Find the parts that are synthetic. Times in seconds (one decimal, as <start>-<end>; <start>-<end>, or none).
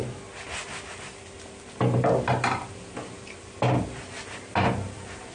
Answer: none